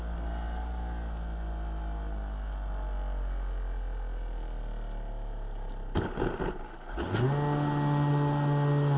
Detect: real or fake real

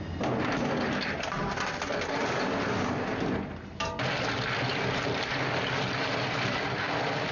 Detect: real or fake real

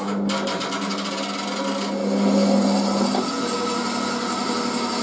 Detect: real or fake real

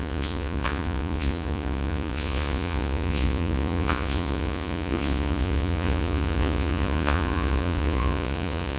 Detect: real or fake fake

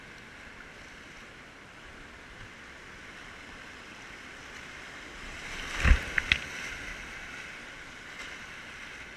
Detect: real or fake real